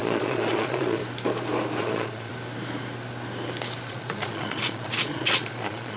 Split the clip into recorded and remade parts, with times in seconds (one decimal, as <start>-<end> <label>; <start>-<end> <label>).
0.0-1.0 remade; 1.0-1.8 recorded; 1.8-2.3 remade; 2.3-3.9 recorded; 3.9-6.0 remade